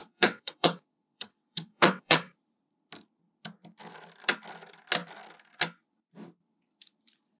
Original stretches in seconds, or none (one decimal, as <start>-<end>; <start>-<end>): 2.3-7.4

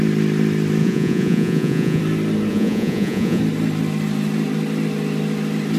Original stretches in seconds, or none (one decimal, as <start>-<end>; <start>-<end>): 0.0-0.8; 2.0-2.5; 3.4-5.8